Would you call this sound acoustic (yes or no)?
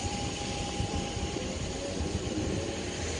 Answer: no